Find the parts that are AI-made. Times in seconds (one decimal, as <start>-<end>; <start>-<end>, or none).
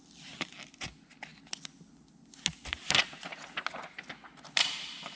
none